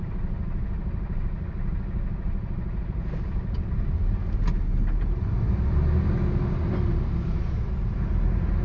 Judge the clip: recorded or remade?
recorded